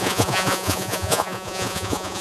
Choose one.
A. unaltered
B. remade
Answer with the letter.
B